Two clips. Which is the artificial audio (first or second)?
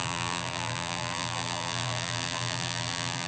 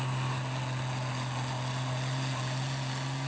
first